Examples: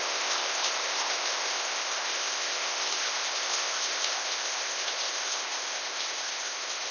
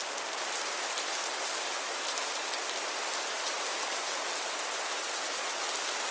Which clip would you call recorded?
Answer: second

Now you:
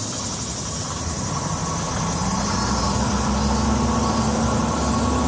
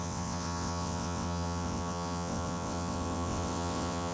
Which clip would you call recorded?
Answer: first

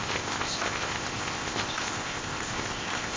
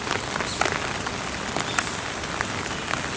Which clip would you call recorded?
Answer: second